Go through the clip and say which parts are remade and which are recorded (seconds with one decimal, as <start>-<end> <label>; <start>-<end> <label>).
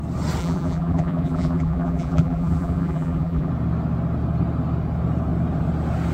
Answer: 0.0-0.4 recorded; 0.4-3.5 remade; 3.5-6.1 recorded